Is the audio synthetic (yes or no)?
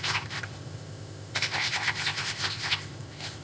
yes